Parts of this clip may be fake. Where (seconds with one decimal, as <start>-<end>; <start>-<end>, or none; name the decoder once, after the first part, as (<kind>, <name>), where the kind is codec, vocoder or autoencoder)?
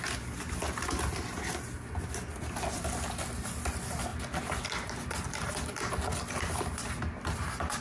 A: 4.1-7.8 (vocoder, BigVGAN v2)